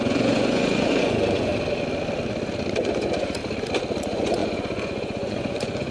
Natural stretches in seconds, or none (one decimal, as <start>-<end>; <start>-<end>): 1.5-2.8; 3.4-4.0